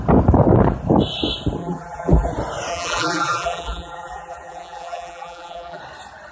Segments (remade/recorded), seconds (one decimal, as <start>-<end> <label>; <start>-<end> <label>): 0.0-1.6 recorded; 1.6-2.3 remade; 2.3-2.7 recorded; 2.7-5.8 remade; 5.8-6.3 recorded